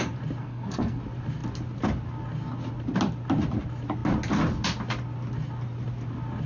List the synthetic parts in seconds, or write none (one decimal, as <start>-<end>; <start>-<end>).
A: 0.4-1.0